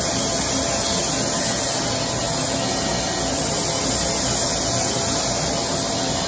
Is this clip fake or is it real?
real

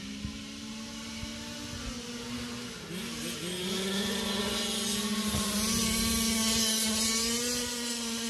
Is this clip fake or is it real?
real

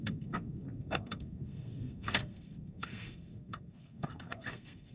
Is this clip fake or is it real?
fake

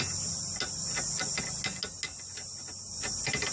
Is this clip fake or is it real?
real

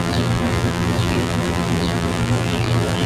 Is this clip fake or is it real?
fake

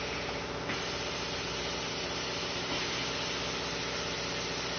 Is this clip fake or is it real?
real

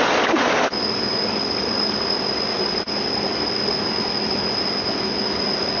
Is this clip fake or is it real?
real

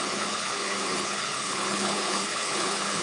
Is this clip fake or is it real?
fake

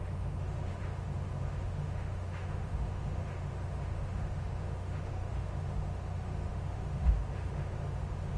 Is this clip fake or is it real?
fake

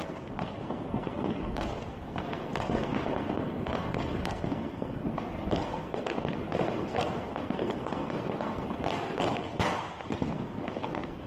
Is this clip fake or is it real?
fake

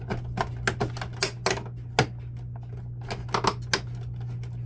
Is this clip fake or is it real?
real